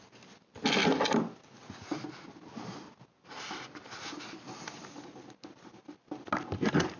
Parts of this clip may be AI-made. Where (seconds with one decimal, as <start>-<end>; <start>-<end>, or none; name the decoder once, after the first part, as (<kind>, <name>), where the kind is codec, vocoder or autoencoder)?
none